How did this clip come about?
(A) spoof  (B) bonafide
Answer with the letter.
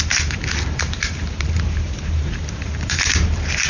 A